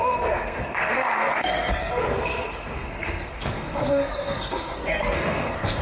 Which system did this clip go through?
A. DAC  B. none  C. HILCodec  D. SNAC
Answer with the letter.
D